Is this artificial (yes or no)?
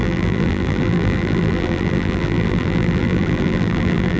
yes